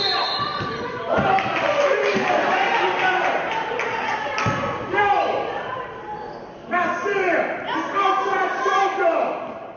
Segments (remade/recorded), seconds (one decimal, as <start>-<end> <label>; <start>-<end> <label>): 0.0-0.5 remade; 0.5-1.0 recorded; 1.0-9.8 remade